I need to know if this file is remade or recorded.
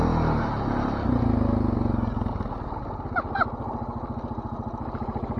recorded